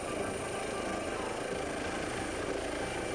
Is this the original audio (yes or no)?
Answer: yes